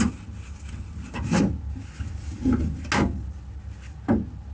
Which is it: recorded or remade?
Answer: recorded